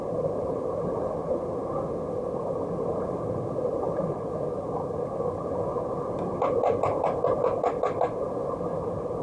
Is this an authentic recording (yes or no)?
yes